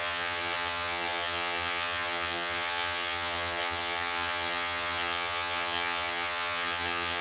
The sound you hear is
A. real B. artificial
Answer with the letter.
B